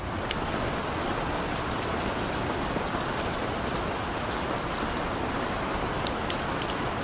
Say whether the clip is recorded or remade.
recorded